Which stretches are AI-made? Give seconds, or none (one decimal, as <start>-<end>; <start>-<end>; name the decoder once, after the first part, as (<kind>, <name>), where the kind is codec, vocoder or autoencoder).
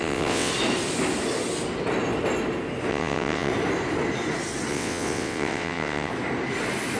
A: 0.0-0.5 (vocoder, WaveNeXt); 2.9-3.5; 4.7-6.1